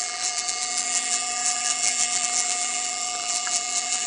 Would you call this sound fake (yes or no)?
yes